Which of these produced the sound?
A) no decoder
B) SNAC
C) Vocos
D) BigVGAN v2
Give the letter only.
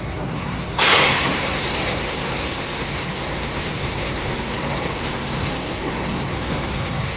B